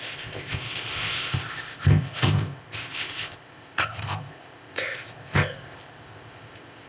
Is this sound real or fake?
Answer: fake